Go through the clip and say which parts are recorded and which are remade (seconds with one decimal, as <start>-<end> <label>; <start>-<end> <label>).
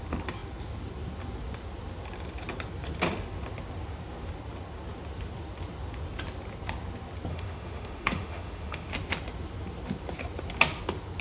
0.0-7.3 recorded; 7.3-8.9 remade; 8.9-11.2 recorded